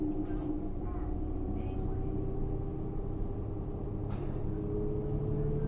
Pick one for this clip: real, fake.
real